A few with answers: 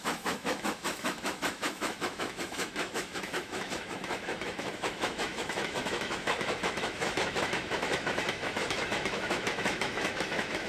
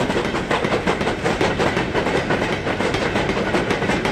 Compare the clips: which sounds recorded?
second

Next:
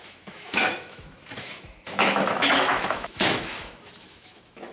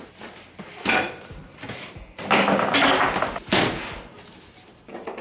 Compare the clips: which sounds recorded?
second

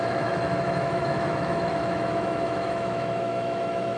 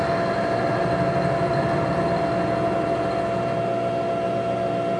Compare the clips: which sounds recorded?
second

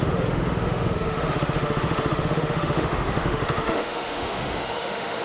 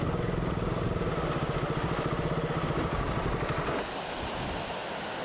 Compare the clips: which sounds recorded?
second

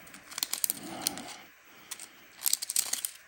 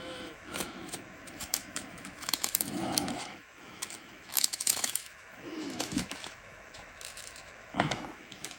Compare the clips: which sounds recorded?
first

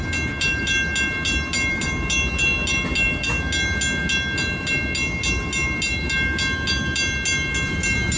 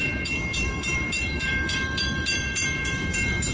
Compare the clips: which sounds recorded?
first